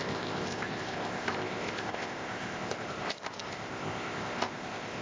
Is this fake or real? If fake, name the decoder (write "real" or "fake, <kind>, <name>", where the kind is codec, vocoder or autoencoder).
fake, codec, ZipCodec